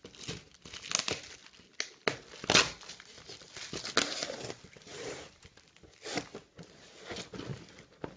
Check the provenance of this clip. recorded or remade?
recorded